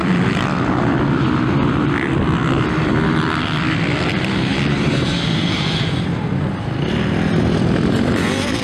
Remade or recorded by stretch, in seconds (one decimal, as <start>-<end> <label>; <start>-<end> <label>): 0.0-2.4 remade; 2.4-3.1 recorded; 3.1-8.6 remade